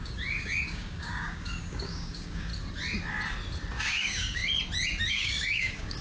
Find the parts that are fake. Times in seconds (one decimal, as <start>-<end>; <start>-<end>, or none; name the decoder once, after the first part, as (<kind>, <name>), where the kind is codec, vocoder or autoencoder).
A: 0.0-2.5 (codec, DAC); 3.8-4.4; 5.1-6.0

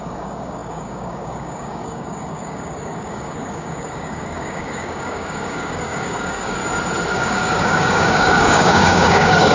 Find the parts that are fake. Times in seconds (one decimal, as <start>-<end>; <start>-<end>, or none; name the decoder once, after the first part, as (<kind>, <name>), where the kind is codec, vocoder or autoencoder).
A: 0.0-6.6 (codec, DAC); 7.1-9.5

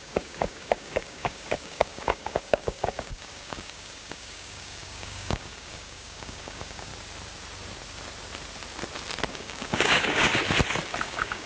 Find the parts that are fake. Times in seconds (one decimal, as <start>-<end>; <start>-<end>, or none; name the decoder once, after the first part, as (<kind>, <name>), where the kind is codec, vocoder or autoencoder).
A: 0.0-6.9 (codec, DAC); 9.3-10.3; 11.0-11.5

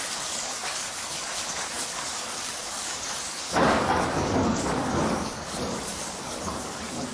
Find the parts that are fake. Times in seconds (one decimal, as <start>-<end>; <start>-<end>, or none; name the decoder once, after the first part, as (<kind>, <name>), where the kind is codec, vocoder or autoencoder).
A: 0.0-7.1 (codec, DAC)

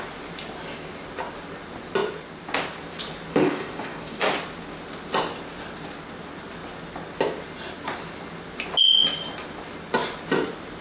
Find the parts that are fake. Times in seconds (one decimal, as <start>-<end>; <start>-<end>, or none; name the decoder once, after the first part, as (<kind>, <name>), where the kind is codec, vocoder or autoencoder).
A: 3.3-4.2 (codec, DAC)

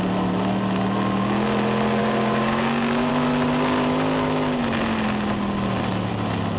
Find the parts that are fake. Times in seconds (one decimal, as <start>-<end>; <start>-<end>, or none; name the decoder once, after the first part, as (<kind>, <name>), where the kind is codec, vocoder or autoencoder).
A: 2.0-3.1 (codec, DAC)